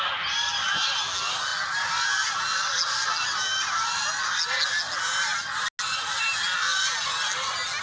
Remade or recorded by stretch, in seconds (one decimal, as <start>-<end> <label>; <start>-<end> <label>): 0.0-7.8 recorded